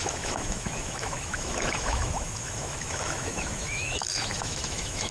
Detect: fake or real fake